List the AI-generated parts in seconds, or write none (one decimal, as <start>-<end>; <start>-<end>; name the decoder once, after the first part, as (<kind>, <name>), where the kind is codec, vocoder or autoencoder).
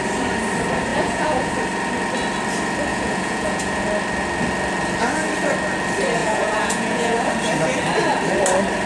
0.9-1.5 (vocoder, Vocos); 2.9-3.8; 6.2-7.3